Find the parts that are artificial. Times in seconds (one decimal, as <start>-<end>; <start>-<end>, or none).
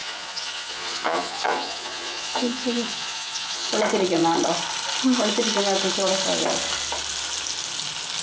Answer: 0.0-3.7